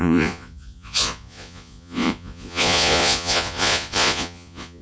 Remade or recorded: remade